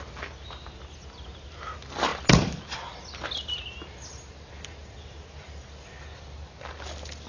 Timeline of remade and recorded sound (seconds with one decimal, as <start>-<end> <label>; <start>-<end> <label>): 0.0-7.3 recorded